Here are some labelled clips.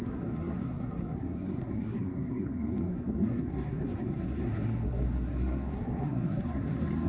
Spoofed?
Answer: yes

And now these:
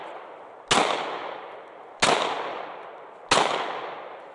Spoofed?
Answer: no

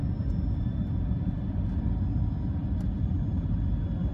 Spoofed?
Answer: no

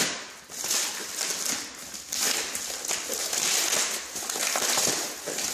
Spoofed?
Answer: no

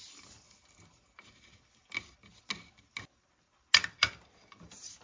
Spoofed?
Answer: no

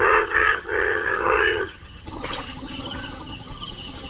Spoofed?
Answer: yes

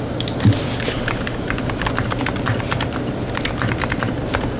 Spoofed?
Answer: no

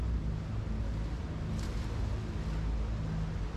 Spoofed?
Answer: no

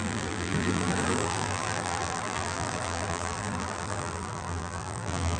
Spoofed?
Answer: yes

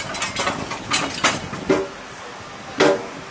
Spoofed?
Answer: no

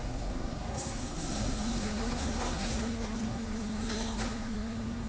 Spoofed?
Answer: yes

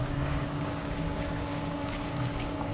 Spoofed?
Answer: yes